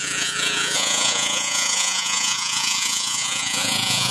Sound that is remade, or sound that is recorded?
remade